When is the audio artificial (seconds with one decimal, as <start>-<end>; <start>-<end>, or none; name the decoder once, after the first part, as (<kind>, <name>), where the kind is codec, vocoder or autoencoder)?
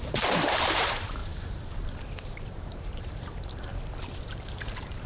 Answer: 0.0-1.2 (vocoder, BigVGAN v2); 2.4-3.7; 4.2-5.1